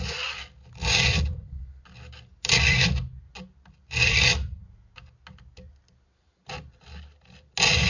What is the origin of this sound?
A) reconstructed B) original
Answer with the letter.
B